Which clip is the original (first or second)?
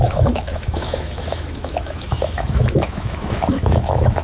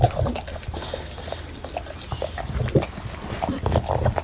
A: second